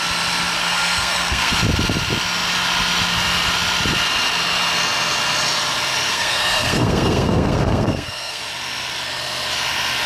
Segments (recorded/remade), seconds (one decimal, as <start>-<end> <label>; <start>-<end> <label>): 0.0-0.6 recorded; 0.6-1.5 remade; 1.5-6.1 recorded; 6.1-8.4 remade; 8.4-10.1 recorded